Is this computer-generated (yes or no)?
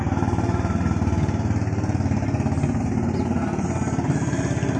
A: no